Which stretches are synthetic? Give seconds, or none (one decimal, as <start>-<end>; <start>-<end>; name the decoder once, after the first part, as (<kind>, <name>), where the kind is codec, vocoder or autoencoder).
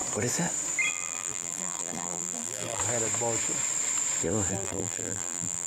0.9-2.8 (vocoder, BigVGAN v2); 4.5-5.7